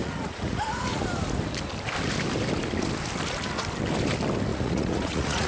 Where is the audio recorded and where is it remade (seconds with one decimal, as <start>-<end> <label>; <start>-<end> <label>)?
0.0-1.0 remade; 1.0-4.5 recorded; 4.5-5.5 remade